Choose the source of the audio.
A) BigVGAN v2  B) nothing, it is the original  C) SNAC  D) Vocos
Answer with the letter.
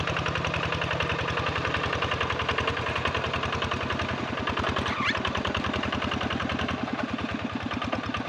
B